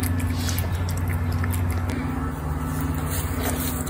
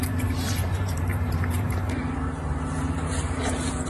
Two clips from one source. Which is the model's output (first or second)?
second